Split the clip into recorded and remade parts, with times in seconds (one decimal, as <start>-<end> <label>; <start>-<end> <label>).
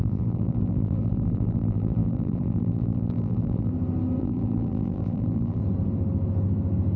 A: 0.0-3.7 remade; 3.7-4.2 recorded; 4.2-5.6 remade; 5.6-7.0 recorded